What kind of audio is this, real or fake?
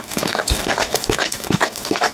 fake